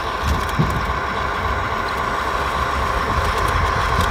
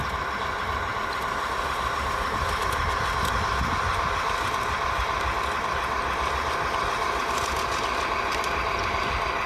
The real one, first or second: first